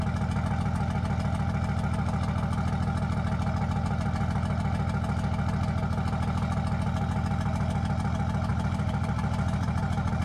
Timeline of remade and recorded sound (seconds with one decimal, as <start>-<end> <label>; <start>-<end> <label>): 0.0-8.5 recorded; 8.5-10.2 remade